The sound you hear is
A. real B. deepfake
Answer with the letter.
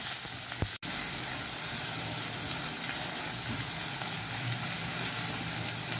A